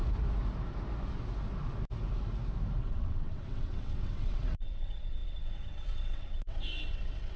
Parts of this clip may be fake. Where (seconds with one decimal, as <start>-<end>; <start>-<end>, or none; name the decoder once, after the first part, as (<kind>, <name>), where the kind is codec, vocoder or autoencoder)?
2.8-7.4 (vocoder, WaveNeXt)